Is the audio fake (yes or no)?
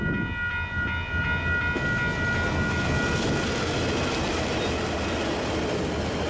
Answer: no